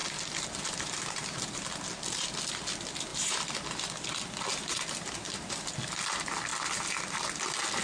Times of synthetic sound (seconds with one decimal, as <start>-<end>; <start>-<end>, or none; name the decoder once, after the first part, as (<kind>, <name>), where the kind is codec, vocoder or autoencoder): 3.1-5.7 (vocoder, BigVGAN v2); 6.5-7.1